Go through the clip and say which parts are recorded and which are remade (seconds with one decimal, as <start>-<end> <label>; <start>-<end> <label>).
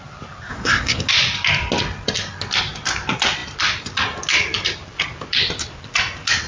0.0-0.5 recorded; 0.5-1.1 remade; 1.1-6.5 recorded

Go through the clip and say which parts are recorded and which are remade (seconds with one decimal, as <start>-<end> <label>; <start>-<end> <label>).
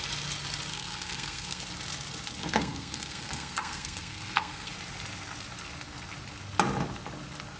0.0-0.7 recorded; 0.7-1.6 remade; 1.6-2.4 recorded; 2.4-4.7 remade; 4.7-7.6 recorded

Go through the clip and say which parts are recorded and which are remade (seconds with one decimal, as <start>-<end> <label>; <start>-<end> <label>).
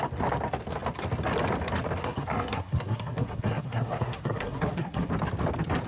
0.0-2.0 recorded; 2.0-5.1 remade; 5.1-5.9 recorded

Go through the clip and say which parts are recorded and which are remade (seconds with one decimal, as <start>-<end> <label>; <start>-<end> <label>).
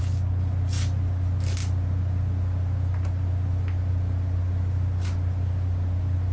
0.0-6.3 recorded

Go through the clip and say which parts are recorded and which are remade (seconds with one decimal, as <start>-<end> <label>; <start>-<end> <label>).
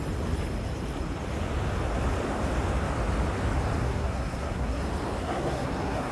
0.0-3.8 recorded; 3.8-4.8 remade; 4.8-5.2 recorded; 5.2-6.1 remade